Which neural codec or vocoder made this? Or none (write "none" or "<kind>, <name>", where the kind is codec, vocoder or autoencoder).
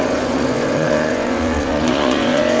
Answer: vocoder, Vocos